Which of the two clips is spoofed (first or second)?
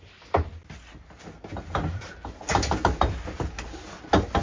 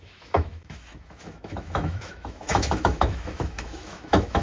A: second